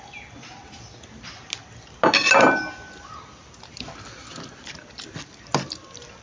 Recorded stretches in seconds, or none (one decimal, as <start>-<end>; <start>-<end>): 0.0-6.2